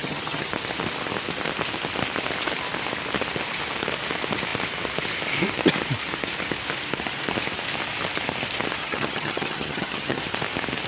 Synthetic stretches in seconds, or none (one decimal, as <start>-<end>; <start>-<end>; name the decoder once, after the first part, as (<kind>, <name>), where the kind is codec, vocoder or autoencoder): 0.0-0.5 (vocoder, HiFi-GAN); 8.8-10.2